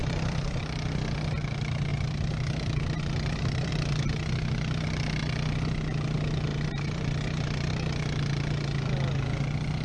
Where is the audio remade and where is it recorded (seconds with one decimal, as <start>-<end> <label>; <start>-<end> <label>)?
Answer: 0.0-0.6 remade; 0.6-1.9 recorded; 1.9-3.7 remade; 3.7-6.5 recorded; 6.5-8.0 remade; 8.0-9.8 recorded